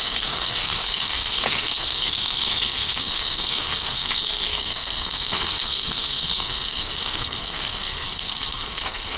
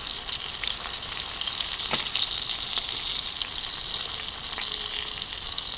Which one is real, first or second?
second